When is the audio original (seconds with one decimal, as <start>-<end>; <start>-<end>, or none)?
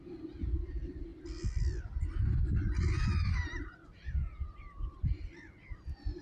0.0-6.2